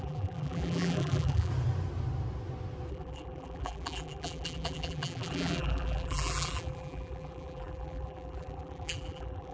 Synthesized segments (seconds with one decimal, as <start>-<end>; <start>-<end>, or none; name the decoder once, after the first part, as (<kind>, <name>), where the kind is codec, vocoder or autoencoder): 0.0-1.5 (vocoder, BigVGAN v2); 2.9-9.5